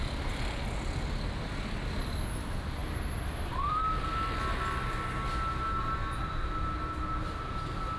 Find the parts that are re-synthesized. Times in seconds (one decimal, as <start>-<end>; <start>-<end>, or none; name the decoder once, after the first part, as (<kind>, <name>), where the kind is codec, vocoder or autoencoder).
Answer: none